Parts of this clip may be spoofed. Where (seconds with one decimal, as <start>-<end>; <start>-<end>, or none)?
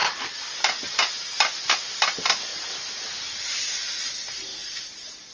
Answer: none